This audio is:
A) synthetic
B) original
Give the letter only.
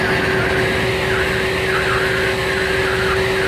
B